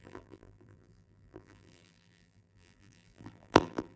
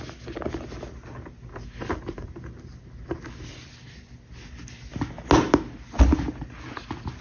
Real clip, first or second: second